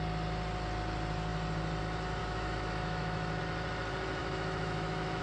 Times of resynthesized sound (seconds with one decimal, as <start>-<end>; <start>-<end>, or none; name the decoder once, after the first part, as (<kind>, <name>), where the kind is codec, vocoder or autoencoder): 2.2-3.4 (autoencoder, DAC-VAE); 4.2-5.2